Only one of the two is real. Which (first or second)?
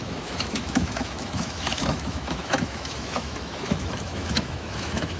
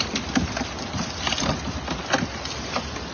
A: second